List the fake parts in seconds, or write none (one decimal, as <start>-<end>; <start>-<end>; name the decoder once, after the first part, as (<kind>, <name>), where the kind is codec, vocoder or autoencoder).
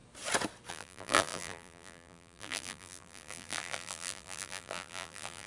0.7-5.5 (vocoder, BigVGAN v2)